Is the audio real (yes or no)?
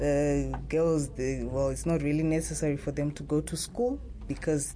yes